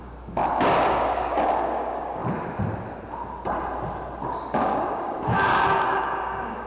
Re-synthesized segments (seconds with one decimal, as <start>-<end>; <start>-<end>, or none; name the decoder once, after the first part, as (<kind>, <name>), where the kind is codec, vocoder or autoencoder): 0.0-0.4 (codec, DAC); 0.9-2.2; 4.3-6.7